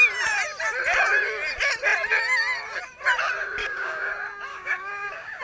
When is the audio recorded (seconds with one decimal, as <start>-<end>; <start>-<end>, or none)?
0.0-3.6; 4.1-4.5